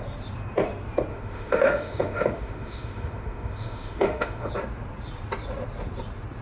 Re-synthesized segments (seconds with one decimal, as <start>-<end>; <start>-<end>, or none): 1.1-4.5